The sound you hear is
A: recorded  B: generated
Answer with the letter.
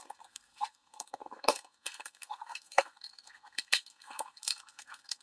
B